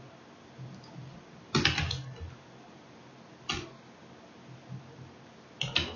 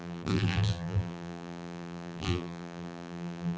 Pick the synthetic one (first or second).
second